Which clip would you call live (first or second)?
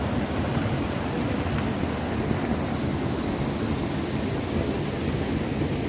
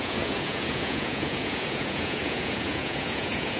first